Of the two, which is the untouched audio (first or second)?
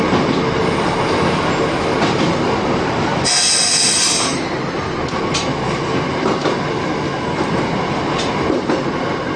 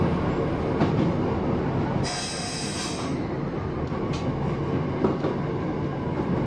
second